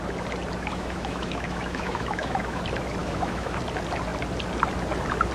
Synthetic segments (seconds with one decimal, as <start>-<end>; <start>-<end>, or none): 0.7-2.6; 3.0-3.6